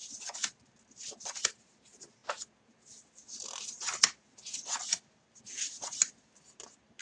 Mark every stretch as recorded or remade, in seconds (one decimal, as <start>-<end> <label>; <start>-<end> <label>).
0.0-7.0 recorded